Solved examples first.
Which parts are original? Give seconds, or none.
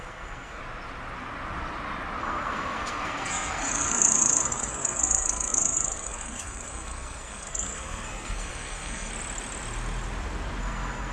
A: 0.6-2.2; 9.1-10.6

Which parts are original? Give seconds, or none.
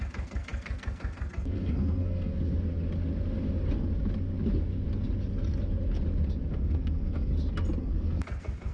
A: 2.3-6.5; 7.3-7.8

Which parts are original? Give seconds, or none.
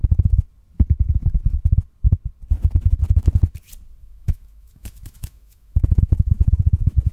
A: 0.0-4.0; 6.5-7.1